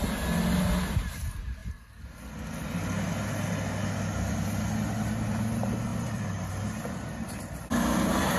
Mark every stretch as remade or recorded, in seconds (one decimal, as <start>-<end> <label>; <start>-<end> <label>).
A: 0.0-5.9 recorded; 5.9-8.4 remade